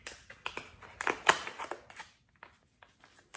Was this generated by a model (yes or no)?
no